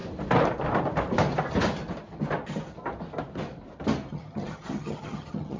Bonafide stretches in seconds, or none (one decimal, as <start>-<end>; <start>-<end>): 0.0-4.1